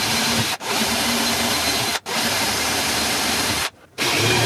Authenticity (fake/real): fake